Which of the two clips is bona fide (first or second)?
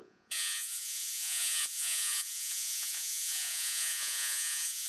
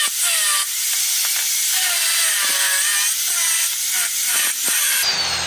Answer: second